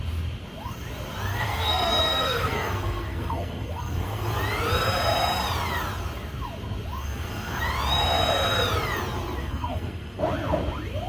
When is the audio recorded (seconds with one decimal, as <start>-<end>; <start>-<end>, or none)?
0.0-1.3; 4.3-7.0; 7.6-9.4; 10.2-11.1